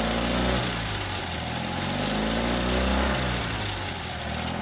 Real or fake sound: real